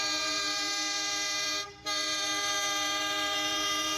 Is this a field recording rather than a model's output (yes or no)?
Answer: no